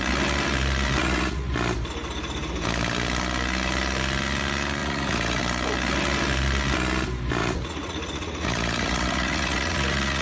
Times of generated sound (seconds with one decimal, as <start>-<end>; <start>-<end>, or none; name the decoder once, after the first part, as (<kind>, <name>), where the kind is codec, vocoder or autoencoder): 1.0-1.5 (vocoder, Vocos); 4.8-5.4; 7.4-10.2